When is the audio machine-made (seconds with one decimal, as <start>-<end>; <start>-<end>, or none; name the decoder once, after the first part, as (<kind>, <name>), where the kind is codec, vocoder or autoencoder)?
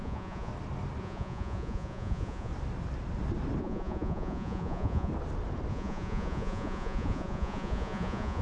0.0-0.5 (vocoder, Vocos); 1.0-2.5; 3.6-5.1; 5.7-8.4